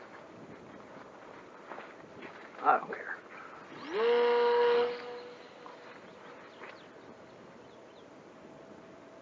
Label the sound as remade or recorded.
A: recorded